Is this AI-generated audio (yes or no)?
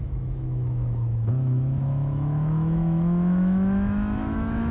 yes